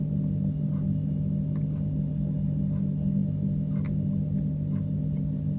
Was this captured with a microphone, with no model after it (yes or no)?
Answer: yes